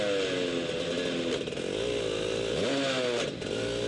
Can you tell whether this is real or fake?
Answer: real